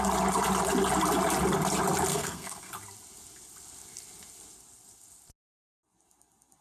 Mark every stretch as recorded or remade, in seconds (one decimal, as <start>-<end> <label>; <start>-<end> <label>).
0.0-2.1 recorded; 2.1-2.7 remade; 2.7-6.6 recorded

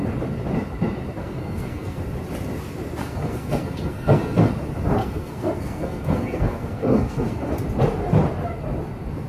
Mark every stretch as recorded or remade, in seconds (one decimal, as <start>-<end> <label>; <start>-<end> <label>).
0.0-1.2 recorded; 1.2-2.0 remade; 2.0-3.0 recorded; 3.0-4.5 remade; 4.5-5.0 recorded; 5.0-7.5 remade; 7.5-9.3 recorded

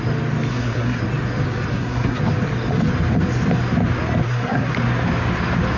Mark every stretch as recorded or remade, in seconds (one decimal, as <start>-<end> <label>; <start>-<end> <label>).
0.0-0.5 recorded; 0.5-1.0 remade; 1.0-1.7 recorded; 1.7-2.2 remade; 2.2-4.2 recorded; 4.2-4.7 remade; 4.7-5.8 recorded

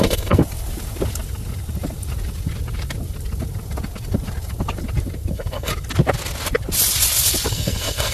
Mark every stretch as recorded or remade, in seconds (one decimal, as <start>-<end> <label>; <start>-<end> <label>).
0.0-0.4 remade; 0.4-5.3 recorded; 5.3-5.7 remade; 5.7-7.5 recorded; 7.5-8.1 remade

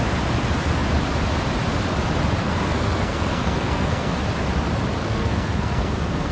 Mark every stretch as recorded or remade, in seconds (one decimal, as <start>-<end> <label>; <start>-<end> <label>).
0.0-2.4 recorded; 2.4-4.2 remade; 4.2-5.0 recorded; 5.0-6.3 remade

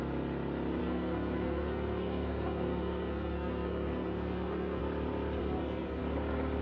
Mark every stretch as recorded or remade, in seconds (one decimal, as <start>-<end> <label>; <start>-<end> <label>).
0.0-0.8 recorded; 0.8-4.8 remade; 4.8-5.4 recorded; 5.4-6.0 remade; 6.0-6.6 recorded

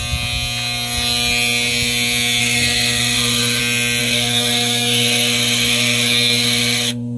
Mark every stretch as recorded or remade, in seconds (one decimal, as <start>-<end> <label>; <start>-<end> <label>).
0.0-2.4 recorded; 2.4-3.6 remade; 3.6-4.0 recorded; 4.0-7.2 remade

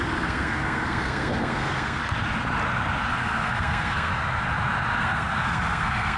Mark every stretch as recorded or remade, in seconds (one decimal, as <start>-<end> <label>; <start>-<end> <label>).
0.0-2.0 remade; 2.0-3.1 recorded; 3.1-4.1 remade; 4.1-5.0 recorded; 5.0-6.2 remade